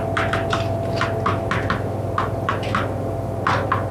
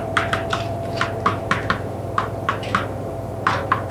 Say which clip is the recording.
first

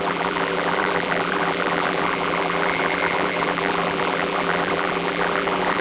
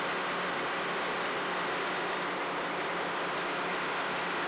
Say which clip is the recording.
second